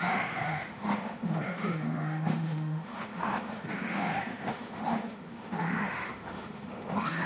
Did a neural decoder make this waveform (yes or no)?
yes